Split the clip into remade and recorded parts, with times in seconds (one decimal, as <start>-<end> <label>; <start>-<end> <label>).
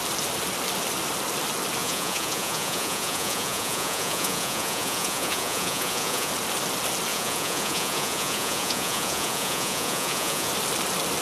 0.0-1.8 recorded; 1.8-6.3 remade; 6.3-7.1 recorded; 7.1-10.5 remade; 10.5-11.2 recorded